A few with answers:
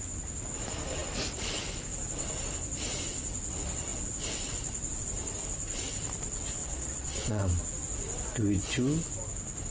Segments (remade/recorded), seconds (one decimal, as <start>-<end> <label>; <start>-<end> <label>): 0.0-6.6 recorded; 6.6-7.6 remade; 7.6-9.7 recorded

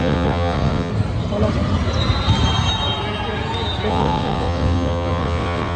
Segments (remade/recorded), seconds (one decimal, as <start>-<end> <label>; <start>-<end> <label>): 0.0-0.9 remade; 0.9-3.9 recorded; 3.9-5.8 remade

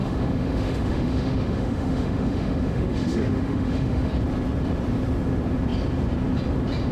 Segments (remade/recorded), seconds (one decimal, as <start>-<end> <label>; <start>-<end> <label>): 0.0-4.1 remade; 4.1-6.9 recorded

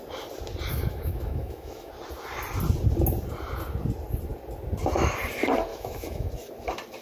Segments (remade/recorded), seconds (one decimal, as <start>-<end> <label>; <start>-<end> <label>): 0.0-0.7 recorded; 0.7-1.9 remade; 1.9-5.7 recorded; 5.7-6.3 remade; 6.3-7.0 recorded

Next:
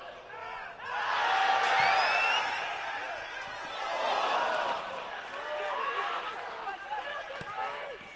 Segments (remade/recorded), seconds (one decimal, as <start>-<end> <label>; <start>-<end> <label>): 0.0-8.2 recorded

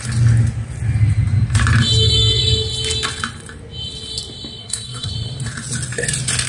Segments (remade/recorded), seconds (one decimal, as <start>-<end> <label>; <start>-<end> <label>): 0.0-4.6 recorded; 4.6-5.1 remade; 5.1-6.5 recorded

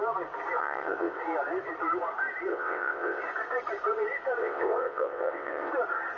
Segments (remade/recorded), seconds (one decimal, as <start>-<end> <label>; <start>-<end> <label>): 0.0-0.6 recorded; 0.6-1.2 remade; 1.2-2.5 recorded; 2.5-3.2 remade; 3.2-4.4 recorded; 4.4-5.7 remade; 5.7-6.2 recorded

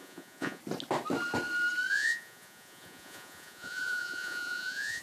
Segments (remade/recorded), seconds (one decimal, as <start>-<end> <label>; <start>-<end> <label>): 0.0-0.6 remade; 0.6-1.9 recorded; 1.9-5.0 remade